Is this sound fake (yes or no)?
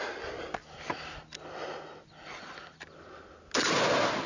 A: no